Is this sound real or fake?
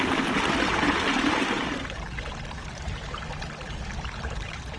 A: real